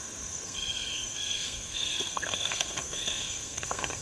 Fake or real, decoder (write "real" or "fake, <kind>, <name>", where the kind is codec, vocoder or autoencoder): fake, codec, SNAC